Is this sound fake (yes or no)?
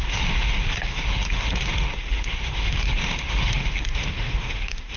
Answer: yes